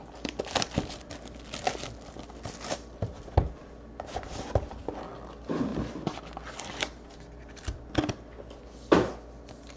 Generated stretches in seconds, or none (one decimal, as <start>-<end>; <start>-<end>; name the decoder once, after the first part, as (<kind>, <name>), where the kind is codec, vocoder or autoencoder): none